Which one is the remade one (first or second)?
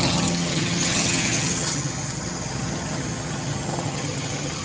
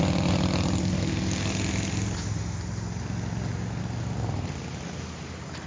first